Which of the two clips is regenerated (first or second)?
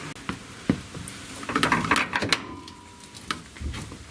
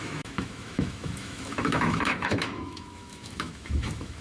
second